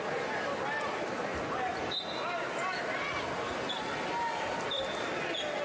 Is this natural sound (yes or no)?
yes